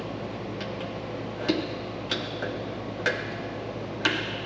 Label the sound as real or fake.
real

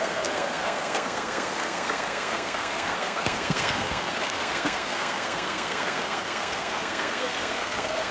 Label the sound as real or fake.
fake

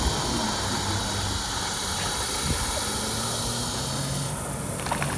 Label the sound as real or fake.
real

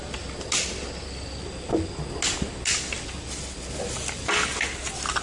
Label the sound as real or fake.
real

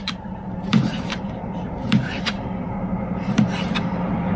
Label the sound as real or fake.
fake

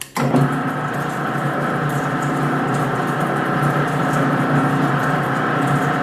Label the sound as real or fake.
real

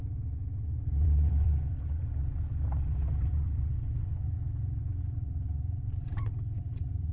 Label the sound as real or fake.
fake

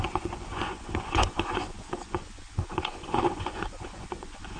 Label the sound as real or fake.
fake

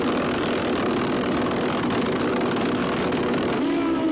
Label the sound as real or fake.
real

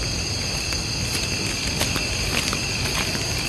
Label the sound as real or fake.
real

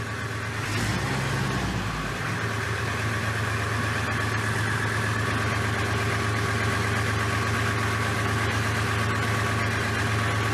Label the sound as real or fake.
real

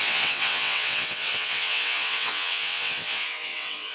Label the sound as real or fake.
fake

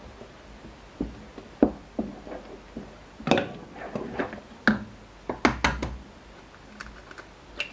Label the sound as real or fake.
real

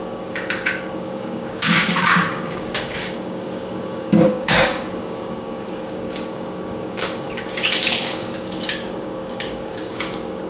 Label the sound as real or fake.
fake